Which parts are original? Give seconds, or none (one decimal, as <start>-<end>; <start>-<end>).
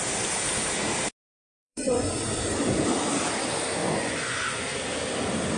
0.0-1.5; 2.1-3.8; 4.4-5.6